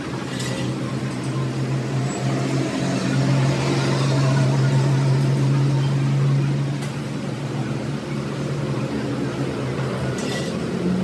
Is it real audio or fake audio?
real